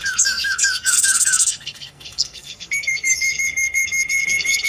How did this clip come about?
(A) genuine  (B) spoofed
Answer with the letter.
B